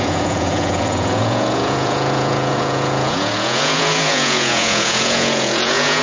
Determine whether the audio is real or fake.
fake